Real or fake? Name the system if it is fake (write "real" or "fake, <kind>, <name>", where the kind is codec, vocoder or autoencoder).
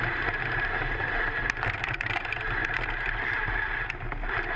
fake, vocoder, BigVGAN v2